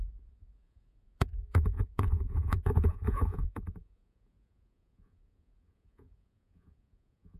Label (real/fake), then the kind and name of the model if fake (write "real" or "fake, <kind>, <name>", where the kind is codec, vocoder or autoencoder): fake, vocoder, Vocos